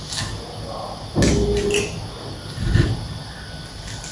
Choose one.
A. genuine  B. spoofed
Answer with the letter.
A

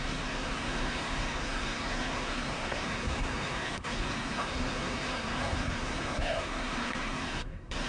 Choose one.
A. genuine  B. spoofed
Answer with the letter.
B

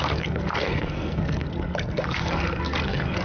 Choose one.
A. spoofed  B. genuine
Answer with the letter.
A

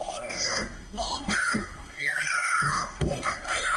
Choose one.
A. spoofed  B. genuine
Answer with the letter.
A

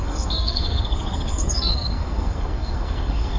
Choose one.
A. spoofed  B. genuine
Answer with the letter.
A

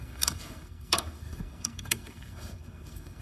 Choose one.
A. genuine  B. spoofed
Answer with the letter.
B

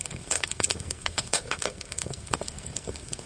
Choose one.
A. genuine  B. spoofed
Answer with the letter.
B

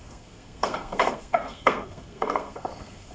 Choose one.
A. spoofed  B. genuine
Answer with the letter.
A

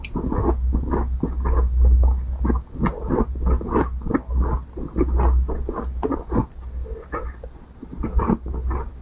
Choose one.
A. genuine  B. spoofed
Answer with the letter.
A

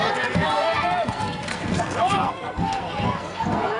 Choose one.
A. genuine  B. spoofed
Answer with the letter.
B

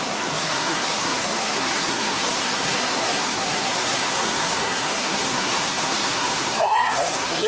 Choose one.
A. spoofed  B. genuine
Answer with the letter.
A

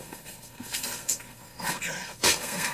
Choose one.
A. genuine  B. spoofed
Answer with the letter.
B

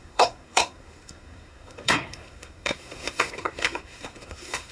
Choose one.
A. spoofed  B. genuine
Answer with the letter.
A